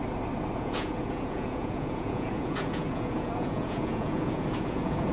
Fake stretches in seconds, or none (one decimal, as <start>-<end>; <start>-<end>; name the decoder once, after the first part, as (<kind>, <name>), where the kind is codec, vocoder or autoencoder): 0.6-5.1 (vocoder, Vocos)